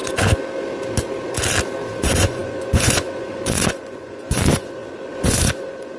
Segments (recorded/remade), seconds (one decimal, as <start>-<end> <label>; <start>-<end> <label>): 0.0-2.0 recorded; 2.0-6.0 remade